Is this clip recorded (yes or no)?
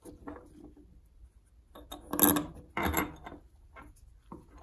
yes